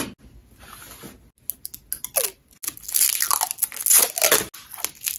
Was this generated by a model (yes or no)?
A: no